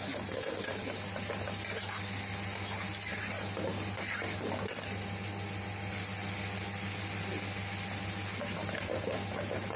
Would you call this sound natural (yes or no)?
yes